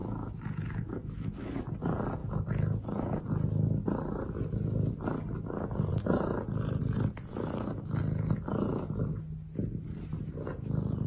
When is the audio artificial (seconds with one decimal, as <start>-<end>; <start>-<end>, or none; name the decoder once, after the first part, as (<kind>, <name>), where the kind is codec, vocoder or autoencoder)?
0.0-1.7 (autoencoder, DAC-VAE); 2.2-3.2; 7.3-8.0